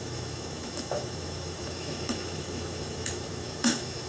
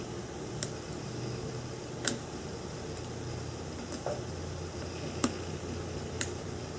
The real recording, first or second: second